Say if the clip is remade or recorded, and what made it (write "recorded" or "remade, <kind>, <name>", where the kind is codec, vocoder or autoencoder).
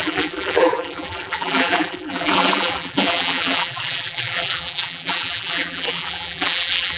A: remade, vocoder, BigVGAN v2